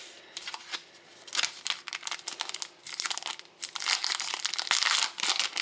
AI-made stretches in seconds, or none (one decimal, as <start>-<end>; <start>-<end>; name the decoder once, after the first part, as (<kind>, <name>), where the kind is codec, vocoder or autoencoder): none